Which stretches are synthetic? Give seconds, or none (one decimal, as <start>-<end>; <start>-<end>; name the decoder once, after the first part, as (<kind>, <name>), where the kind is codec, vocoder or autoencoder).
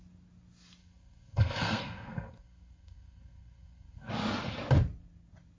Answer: 0.8-4.1 (codec, SNAC)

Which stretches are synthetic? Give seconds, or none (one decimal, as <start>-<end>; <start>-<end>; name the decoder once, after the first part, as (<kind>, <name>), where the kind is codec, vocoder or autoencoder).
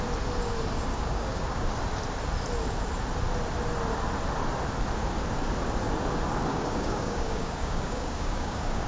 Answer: 0.9-1.7 (codec, DAC); 6.5-8.9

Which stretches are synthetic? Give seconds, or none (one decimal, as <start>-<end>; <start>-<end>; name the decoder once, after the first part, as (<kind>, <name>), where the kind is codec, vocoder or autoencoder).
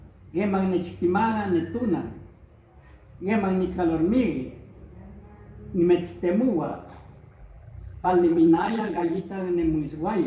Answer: 6.7-9.2 (vocoder, BigVGAN v2)